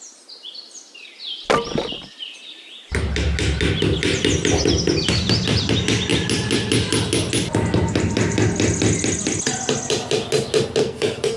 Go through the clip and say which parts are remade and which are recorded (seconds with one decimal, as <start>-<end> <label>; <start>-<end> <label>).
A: 0.0-10.8 recorded; 10.8-11.4 remade